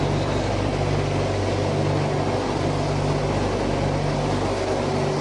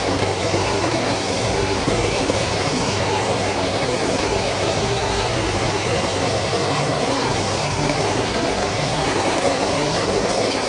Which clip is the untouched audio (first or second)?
first